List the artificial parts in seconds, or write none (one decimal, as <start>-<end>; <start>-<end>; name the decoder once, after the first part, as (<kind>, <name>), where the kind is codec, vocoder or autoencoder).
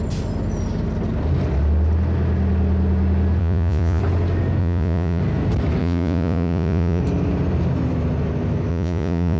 3.4-4.0 (vocoder, Vocos); 4.6-5.2; 5.8-7.0; 8.7-9.4